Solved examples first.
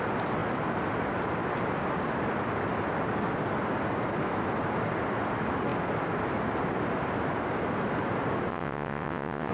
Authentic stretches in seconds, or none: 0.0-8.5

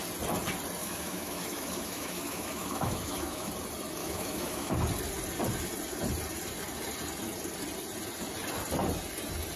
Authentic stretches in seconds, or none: 0.0-0.8; 3.5-4.0; 4.7-9.6

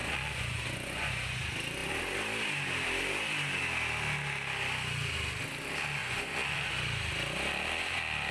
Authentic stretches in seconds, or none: 1.4-6.0; 6.7-8.3

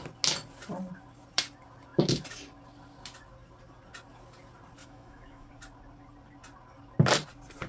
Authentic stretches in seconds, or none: 0.0-4.8; 5.5-7.7

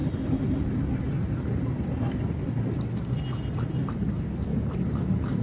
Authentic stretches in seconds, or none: 0.0-5.4

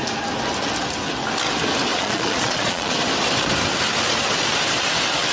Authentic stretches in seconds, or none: 0.0-1.9; 2.9-5.3

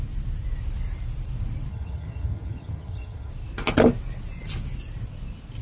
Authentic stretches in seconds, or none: 0.0-1.7; 3.3-5.6

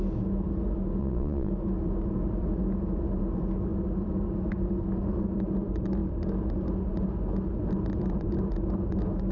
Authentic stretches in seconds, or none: 0.0-1.0; 1.5-9.3